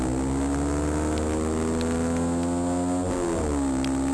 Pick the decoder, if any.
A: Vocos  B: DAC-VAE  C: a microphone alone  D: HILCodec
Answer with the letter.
C